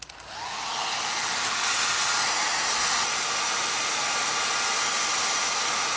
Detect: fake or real real